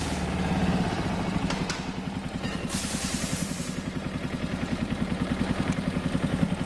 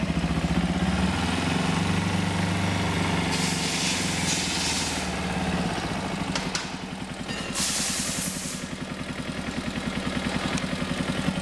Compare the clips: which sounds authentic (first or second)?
second